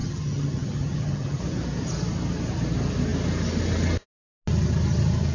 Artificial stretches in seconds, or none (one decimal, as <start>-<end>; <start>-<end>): 0.0-1.4